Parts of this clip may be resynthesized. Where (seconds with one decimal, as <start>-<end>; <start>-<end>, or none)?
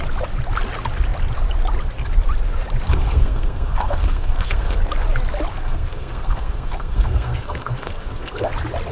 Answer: 2.9-4.8; 5.5-8.5